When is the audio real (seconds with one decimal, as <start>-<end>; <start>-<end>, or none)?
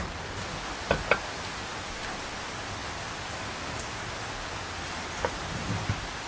0.0-6.3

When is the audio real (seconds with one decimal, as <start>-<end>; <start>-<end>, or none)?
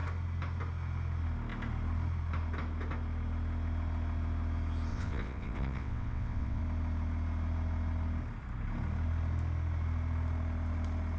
0.0-4.9; 6.6-11.2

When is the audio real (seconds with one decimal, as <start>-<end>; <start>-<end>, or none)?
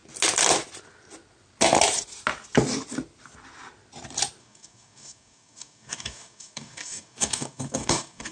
0.0-4.4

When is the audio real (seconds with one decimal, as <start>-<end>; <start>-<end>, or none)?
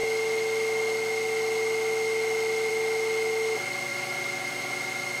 0.0-3.9; 4.7-5.2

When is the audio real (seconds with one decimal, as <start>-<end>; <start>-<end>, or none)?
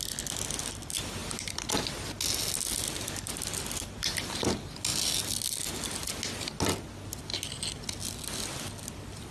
0.0-9.3